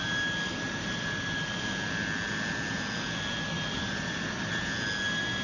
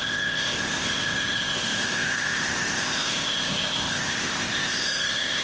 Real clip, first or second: first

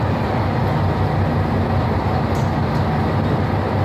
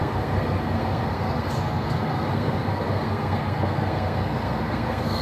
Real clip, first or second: first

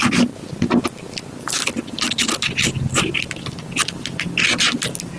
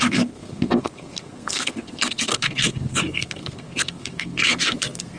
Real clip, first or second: first